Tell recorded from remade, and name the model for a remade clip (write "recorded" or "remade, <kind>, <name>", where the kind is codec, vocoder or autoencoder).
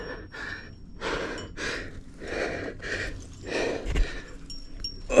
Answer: recorded